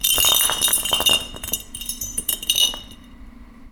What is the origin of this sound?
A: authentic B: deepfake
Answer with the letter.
B